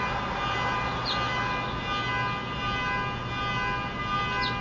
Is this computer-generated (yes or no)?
no